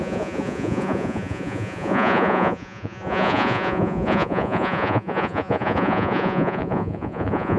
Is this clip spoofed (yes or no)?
yes